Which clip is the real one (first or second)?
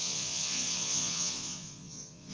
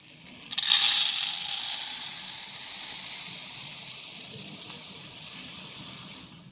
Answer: second